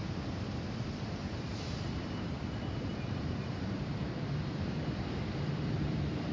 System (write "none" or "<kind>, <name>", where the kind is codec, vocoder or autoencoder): vocoder, BigVGAN v2